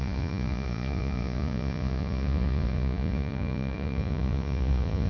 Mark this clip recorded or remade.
remade